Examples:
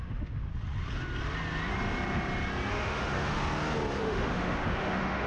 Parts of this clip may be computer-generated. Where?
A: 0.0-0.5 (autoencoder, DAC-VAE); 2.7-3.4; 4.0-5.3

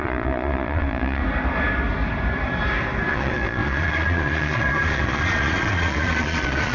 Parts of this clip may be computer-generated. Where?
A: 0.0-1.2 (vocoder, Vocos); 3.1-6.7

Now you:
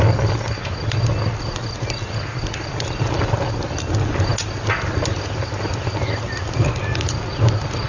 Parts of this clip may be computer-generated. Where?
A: none

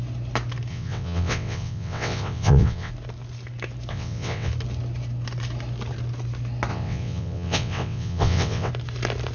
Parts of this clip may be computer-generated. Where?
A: 0.7-2.9 (vocoder, WaveNeXt); 3.9-4.5; 6.7-8.7

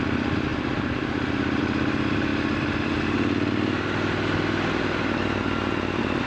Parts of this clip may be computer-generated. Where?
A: none

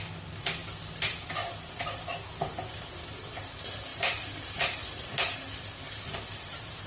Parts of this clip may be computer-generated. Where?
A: none

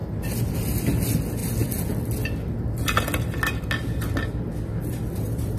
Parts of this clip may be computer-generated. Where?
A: none

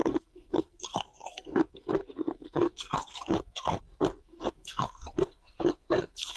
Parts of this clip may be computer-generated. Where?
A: 0.0-3.8 (codec, SNAC); 4.2-6.4